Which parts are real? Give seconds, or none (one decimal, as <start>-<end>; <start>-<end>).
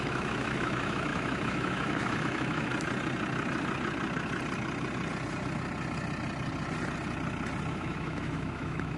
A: 2.7-7.7